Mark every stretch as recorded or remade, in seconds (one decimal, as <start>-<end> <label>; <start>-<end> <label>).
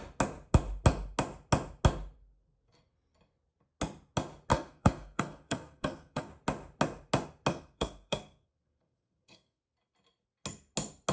0.0-4.5 recorded; 4.5-6.3 remade; 6.3-7.5 recorded; 7.5-9.6 remade; 9.6-11.1 recorded